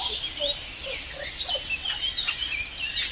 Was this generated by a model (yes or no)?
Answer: no